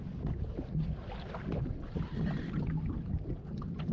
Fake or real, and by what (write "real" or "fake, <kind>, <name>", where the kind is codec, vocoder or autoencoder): real